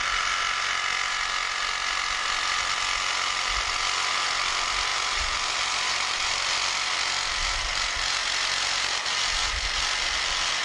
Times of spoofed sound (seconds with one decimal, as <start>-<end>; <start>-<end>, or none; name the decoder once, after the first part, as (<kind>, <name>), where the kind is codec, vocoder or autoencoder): 4.9-6.3 (vocoder, BigVGAN v2)